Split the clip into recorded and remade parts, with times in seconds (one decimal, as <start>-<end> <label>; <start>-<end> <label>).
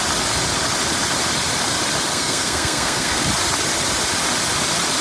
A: 0.0-2.1 recorded; 2.1-3.3 remade; 3.3-5.0 recorded